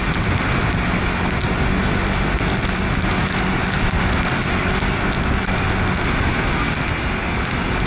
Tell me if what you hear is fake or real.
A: real